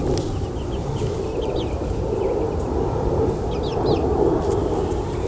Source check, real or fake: real